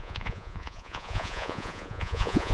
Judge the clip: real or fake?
fake